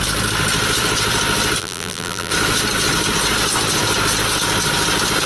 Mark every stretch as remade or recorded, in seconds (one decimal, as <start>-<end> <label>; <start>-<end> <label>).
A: 0.0-1.6 recorded; 1.6-2.3 remade; 2.3-5.3 recorded